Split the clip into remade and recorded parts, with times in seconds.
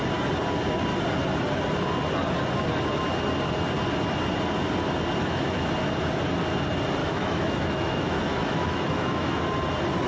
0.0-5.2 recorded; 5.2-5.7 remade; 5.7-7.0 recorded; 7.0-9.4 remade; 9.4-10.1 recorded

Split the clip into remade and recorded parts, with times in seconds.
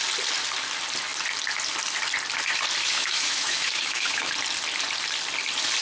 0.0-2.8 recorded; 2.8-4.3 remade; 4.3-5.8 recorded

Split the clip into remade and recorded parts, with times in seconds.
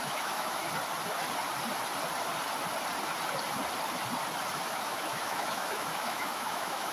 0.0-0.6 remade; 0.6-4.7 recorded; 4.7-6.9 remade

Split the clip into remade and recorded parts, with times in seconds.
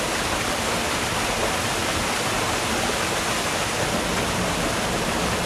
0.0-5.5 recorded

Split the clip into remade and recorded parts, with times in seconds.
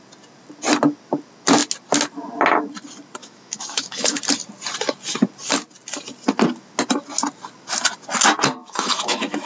0.0-3.2 recorded; 3.2-4.2 remade; 4.2-8.6 recorded; 8.6-9.5 remade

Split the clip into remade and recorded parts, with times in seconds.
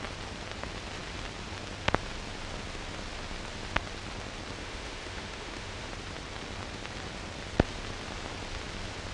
0.0-4.6 recorded; 4.6-5.9 remade; 5.9-9.1 recorded